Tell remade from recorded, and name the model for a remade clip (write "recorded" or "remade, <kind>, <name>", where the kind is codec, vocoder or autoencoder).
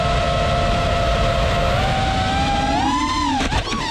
recorded